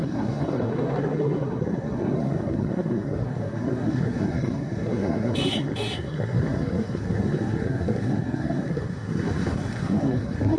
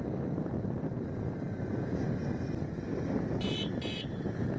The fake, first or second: first